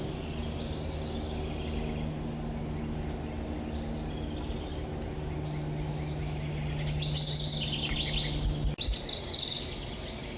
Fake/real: real